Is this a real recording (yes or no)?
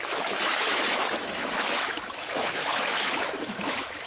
no